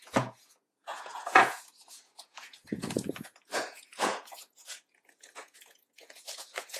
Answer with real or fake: fake